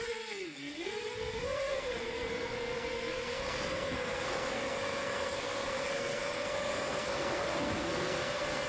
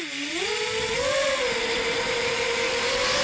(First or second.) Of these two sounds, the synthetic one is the first